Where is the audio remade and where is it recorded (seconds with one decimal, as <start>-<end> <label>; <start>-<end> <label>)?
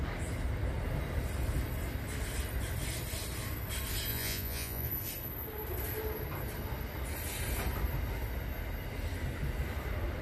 0.0-4.1 recorded; 4.1-4.9 remade; 4.9-10.2 recorded